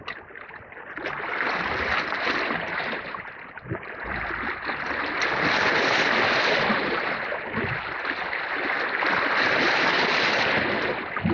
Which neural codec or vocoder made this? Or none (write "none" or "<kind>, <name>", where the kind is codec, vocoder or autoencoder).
none